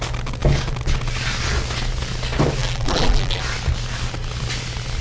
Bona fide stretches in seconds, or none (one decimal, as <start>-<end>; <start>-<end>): 0.0-2.6; 3.4-5.0